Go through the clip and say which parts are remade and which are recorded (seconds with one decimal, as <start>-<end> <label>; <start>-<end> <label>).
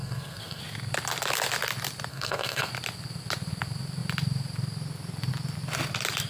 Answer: 0.0-0.6 remade; 0.6-2.1 recorded; 2.1-2.7 remade; 2.7-6.3 recorded